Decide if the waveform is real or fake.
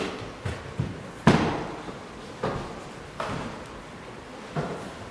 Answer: real